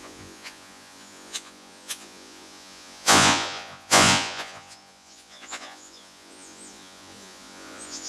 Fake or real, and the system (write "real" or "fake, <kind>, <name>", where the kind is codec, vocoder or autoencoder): fake, vocoder, Vocos